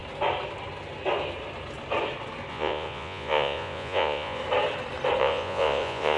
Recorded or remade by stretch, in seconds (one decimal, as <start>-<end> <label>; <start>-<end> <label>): 0.0-2.5 recorded; 2.5-4.4 remade; 4.4-5.2 recorded; 5.2-6.2 remade